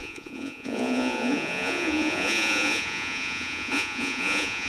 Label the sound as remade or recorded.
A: remade